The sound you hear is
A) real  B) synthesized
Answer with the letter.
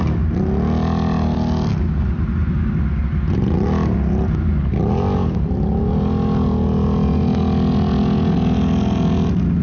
A